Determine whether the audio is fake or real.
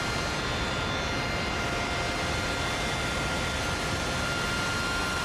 real